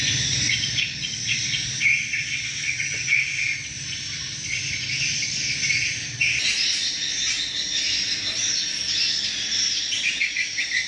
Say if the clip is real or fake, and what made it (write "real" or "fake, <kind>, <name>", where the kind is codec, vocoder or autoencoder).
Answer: real